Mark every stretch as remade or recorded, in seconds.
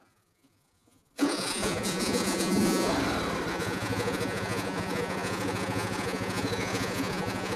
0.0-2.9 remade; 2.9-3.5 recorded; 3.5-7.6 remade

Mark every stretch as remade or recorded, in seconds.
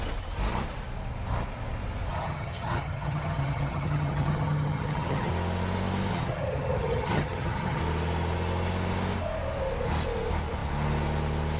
0.0-2.1 recorded; 2.1-5.3 remade; 5.3-6.1 recorded; 6.1-7.8 remade; 7.8-11.6 recorded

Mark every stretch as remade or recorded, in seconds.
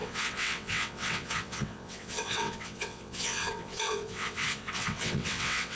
0.0-5.8 remade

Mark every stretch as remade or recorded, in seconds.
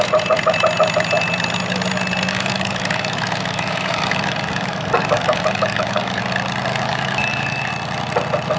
0.0-2.3 recorded; 2.3-6.2 remade; 6.2-6.7 recorded; 6.7-7.7 remade; 7.7-8.6 recorded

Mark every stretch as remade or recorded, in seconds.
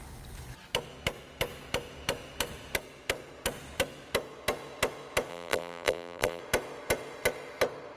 0.0-5.3 recorded; 5.3-6.4 remade; 6.4-8.0 recorded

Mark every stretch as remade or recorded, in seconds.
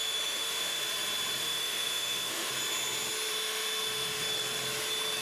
0.0-0.8 remade; 0.8-1.4 recorded; 1.4-2.5 remade; 2.5-3.3 recorded; 3.3-4.3 remade; 4.3-5.2 recorded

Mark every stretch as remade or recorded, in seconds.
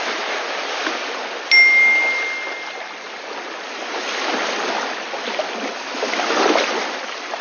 0.0-7.4 recorded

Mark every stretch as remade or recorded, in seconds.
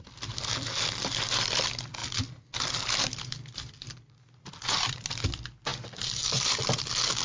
0.0-7.2 recorded